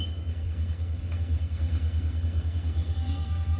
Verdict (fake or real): fake